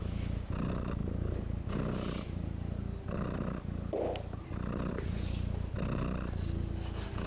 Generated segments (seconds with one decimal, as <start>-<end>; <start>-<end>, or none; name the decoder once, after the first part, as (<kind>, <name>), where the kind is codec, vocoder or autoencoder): none